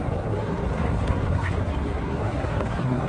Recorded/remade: remade